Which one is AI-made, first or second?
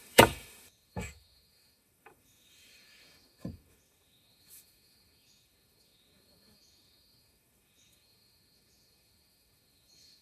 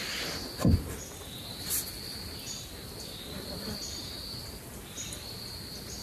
first